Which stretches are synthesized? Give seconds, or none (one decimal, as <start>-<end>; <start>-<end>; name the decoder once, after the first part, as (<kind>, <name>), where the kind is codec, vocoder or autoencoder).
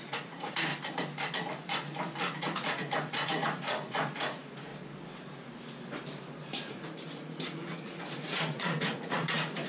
0.0-0.7 (vocoder, Vocos); 2.4-4.7; 6.7-9.7